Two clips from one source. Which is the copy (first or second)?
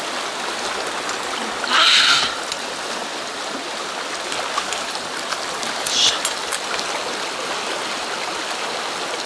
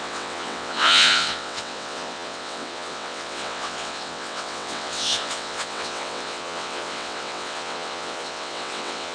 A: second